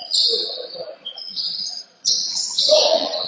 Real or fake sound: fake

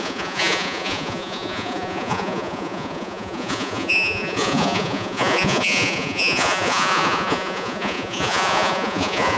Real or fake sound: fake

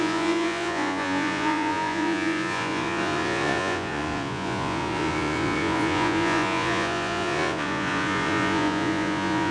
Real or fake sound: fake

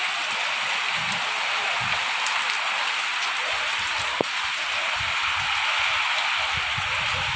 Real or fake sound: real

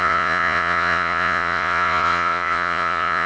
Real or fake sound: fake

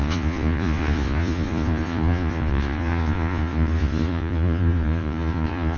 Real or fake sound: fake